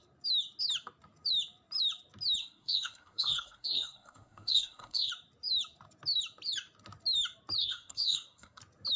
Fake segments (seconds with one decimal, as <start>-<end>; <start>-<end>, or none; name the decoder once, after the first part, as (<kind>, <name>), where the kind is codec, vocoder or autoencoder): 2.4-5.1 (codec, SNAC); 7.6-8.6